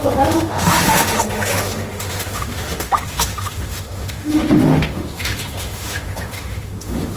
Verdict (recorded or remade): remade